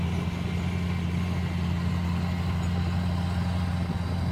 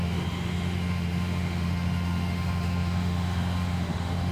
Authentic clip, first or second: first